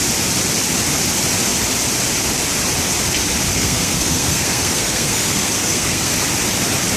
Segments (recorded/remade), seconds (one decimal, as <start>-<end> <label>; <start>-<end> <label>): 0.0-3.5 recorded; 3.5-6.1 remade; 6.1-7.0 recorded

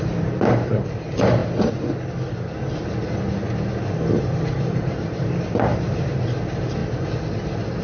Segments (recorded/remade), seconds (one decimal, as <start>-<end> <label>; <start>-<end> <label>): 0.0-1.4 remade; 1.4-4.2 recorded; 4.2-6.8 remade; 6.8-7.8 recorded

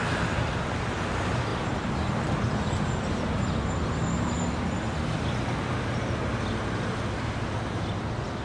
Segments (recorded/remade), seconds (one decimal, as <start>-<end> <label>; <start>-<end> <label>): 0.0-8.4 recorded